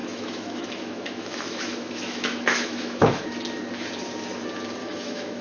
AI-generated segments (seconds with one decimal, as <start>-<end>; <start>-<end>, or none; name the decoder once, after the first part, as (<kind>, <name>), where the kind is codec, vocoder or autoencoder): 0.0-3.2 (autoencoder, DAC-VAE); 4.8-5.4